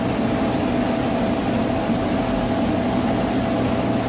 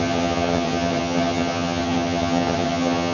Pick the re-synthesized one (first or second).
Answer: second